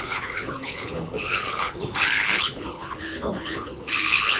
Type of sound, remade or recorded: remade